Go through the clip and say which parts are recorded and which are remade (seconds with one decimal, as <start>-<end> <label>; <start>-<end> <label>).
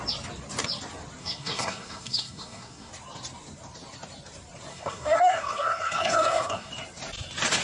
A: 0.0-1.2 recorded; 1.2-2.9 remade; 2.9-4.7 recorded; 4.7-6.7 remade; 6.7-7.6 recorded